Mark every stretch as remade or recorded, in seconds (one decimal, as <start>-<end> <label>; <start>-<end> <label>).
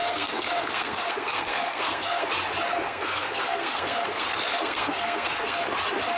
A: 0.0-2.3 remade; 2.3-2.7 recorded; 2.7-5.7 remade; 5.7-6.2 recorded